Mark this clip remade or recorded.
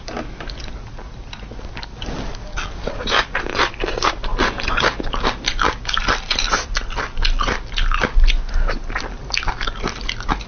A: recorded